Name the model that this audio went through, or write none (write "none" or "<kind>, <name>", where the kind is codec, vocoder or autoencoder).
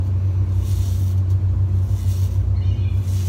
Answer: none